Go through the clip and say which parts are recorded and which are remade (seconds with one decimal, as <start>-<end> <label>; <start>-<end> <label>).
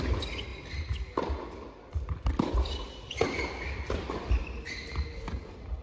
0.0-5.8 recorded